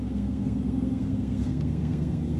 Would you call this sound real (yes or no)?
no